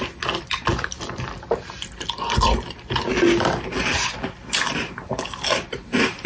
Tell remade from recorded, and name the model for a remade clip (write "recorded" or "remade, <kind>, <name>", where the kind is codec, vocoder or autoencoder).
recorded